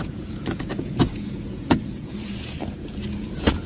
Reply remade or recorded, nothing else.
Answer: remade